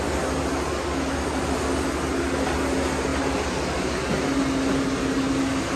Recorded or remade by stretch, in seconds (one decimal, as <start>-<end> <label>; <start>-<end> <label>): 0.0-5.8 recorded